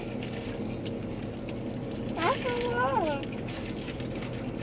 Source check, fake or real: real